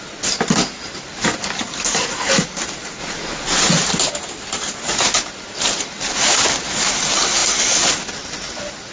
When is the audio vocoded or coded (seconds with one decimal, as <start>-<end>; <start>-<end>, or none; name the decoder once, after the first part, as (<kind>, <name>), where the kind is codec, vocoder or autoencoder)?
3.0-3.7 (vocoder, Vocos)